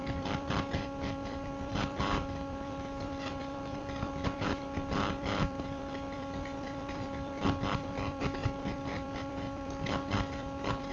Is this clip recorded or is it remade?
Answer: remade